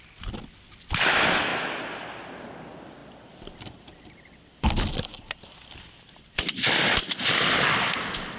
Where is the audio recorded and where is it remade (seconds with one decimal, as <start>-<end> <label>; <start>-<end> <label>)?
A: 0.0-8.4 recorded